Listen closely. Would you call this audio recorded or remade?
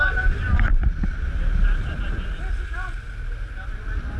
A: recorded